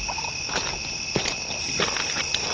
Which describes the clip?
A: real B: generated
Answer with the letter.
B